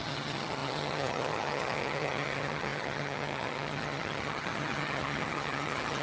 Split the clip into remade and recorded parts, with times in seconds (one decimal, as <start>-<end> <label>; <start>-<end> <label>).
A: 0.0-6.0 remade